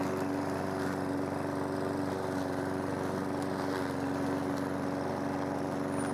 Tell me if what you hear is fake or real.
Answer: real